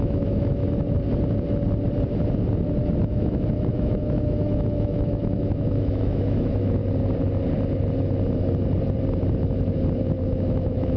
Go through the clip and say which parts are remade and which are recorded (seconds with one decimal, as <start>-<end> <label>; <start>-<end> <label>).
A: 0.0-0.6 remade; 0.6-3.0 recorded; 3.0-6.8 remade; 6.8-10.2 recorded; 10.2-11.0 remade

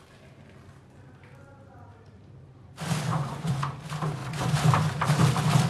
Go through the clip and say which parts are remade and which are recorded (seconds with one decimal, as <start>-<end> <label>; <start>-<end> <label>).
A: 0.0-3.1 recorded; 3.1-3.7 remade; 3.7-5.7 recorded

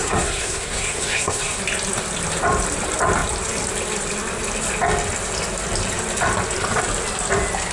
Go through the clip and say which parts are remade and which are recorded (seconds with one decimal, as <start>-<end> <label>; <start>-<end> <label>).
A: 0.0-1.6 remade; 1.6-7.7 recorded

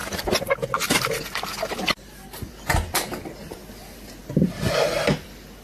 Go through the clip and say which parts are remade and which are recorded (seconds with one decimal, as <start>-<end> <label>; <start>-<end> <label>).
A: 0.0-5.6 recorded

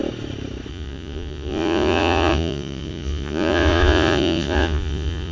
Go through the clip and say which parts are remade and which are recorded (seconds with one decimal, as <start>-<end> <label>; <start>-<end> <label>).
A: 0.0-0.7 recorded; 0.7-5.3 remade

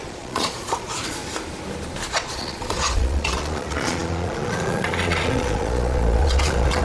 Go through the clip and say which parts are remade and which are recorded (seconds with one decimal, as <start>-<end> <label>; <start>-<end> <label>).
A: 0.0-1.2 remade; 1.2-2.1 recorded; 2.1-6.8 remade

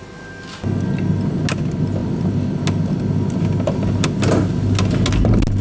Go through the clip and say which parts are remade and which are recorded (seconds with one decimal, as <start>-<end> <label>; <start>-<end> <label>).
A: 0.0-5.6 recorded

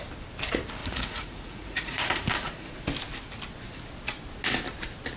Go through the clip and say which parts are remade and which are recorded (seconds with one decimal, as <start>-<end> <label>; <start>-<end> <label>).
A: 0.0-0.8 recorded; 0.8-2.7 remade; 2.7-5.2 recorded